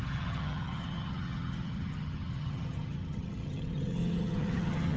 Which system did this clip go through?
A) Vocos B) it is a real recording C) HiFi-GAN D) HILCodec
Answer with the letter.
C